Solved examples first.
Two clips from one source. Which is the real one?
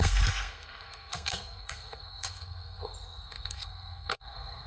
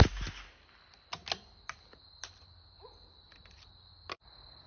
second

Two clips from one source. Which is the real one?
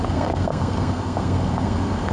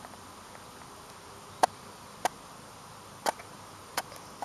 second